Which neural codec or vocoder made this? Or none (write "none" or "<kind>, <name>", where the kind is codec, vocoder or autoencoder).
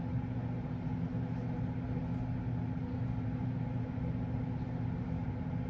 none